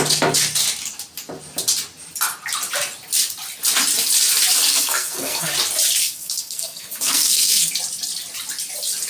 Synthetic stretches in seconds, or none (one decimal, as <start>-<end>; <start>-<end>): 4.7-5.5; 6.0-7.7